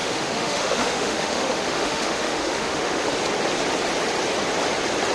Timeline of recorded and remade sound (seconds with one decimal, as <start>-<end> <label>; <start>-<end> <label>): 0.0-3.1 remade; 3.1-5.1 recorded